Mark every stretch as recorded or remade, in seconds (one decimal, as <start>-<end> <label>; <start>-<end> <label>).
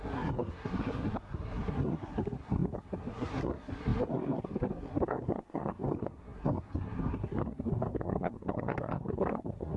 0.0-9.8 remade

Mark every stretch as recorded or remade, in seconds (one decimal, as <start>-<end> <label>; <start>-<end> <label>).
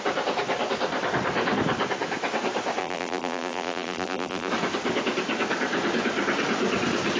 0.0-2.8 recorded; 2.8-4.5 remade; 4.5-7.2 recorded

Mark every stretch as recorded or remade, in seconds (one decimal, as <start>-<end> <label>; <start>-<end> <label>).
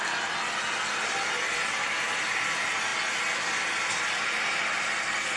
0.0-5.4 recorded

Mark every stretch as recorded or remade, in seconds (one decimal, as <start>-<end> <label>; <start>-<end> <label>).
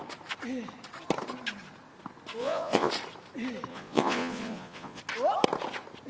0.0-2.4 recorded; 2.4-2.9 remade; 2.9-3.7 recorded; 3.7-5.0 remade; 5.0-6.1 recorded